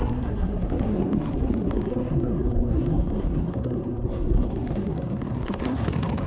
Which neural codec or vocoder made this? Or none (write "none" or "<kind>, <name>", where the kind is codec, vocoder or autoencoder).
codec, SNAC